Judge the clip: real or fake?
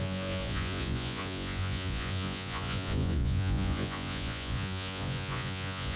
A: fake